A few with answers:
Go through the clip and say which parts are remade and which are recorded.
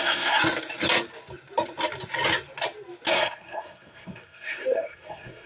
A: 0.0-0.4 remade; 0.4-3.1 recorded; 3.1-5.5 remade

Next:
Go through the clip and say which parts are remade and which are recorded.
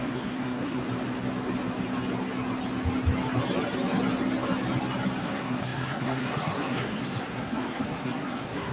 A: 0.0-0.8 remade; 0.8-5.2 recorded; 5.2-8.7 remade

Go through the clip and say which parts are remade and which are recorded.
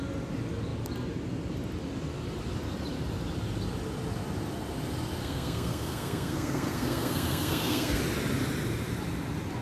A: 0.0-5.2 recorded; 5.2-8.0 remade; 8.0-9.6 recorded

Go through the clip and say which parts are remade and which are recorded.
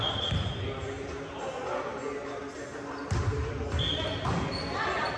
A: 0.0-5.2 recorded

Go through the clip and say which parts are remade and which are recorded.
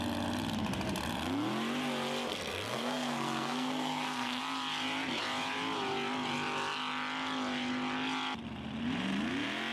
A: 0.0-2.3 recorded; 2.3-4.4 remade; 4.4-9.7 recorded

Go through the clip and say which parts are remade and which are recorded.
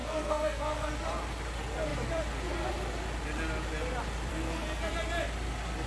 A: 0.0-0.9 remade; 0.9-4.3 recorded; 4.3-4.9 remade; 4.9-5.9 recorded